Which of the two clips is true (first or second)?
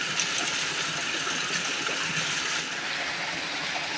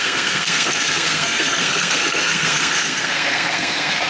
first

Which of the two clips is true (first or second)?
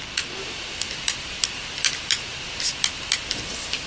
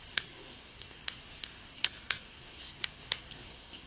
first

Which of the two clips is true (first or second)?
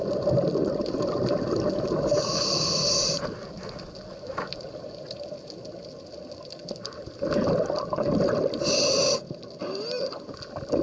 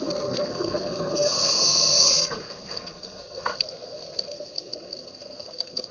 first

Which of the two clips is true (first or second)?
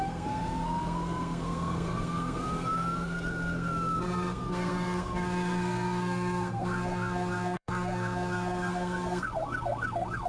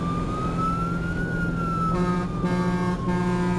second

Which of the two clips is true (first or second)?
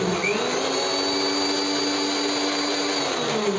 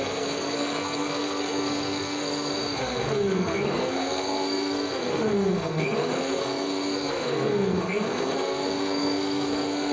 first